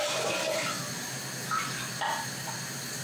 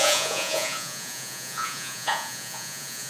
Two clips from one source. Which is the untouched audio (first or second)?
first